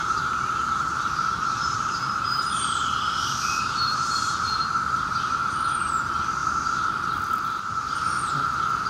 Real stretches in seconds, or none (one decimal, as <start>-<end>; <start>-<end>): 4.6-8.9